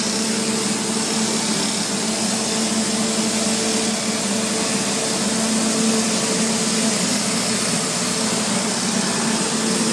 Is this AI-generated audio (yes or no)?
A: no